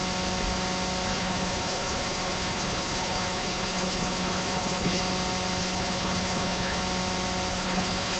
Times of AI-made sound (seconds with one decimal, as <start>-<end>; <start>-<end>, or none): 1.1-5.0; 5.6-6.8; 7.5-8.2